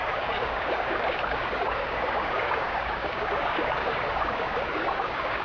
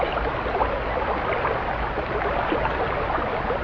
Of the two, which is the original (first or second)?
second